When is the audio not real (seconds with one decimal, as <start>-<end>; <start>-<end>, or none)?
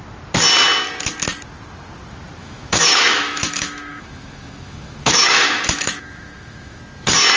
2.4-6.8